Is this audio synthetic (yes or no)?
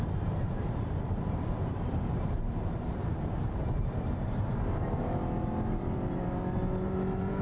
yes